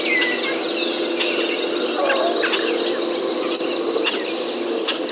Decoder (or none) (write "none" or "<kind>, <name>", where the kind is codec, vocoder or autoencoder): none